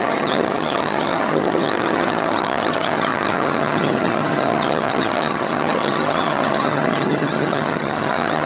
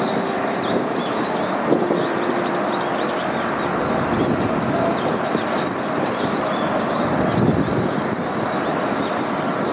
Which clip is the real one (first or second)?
second